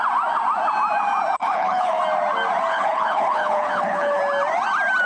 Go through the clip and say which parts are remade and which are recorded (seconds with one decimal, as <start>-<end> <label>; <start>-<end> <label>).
0.0-1.4 recorded; 1.4-2.0 remade; 2.0-2.7 recorded; 2.7-4.2 remade; 4.2-5.1 recorded